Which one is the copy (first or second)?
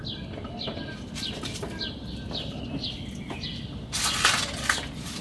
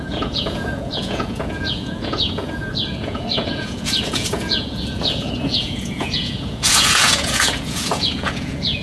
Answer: second